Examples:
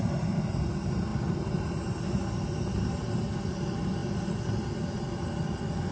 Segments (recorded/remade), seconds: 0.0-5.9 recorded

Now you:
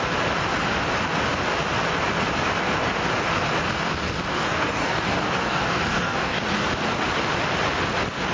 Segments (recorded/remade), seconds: 0.0-4.3 recorded; 4.3-6.4 remade; 6.4-8.3 recorded

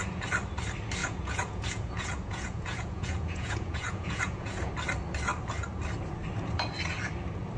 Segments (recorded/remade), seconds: 0.0-1.0 recorded; 1.0-4.7 remade; 4.7-7.6 recorded

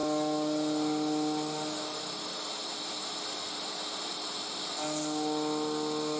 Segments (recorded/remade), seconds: 0.0-6.2 recorded

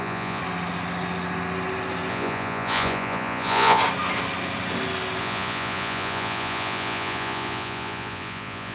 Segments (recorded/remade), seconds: 0.0-0.4 remade; 0.4-2.1 recorded; 2.1-3.8 remade; 3.8-5.2 recorded; 5.2-8.7 remade

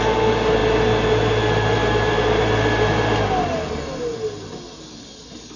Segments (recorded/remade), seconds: 0.0-5.6 recorded

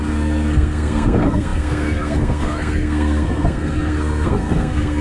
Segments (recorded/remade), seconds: 0.0-5.0 remade

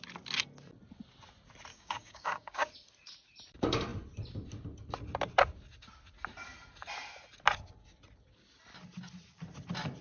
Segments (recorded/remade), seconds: 0.0-1.7 recorded; 1.7-2.7 remade; 2.7-10.0 recorded